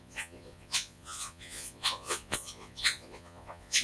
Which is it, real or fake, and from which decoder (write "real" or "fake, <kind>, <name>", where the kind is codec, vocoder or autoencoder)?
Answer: fake, vocoder, Vocos